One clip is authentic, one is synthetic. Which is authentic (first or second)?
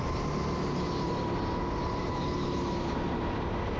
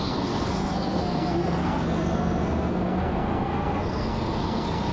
first